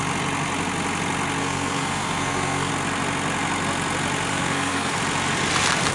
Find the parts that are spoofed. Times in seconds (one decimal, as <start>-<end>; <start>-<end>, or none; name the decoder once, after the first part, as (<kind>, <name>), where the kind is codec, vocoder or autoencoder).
1.4-2.7 (codec, SNAC); 4.3-5.0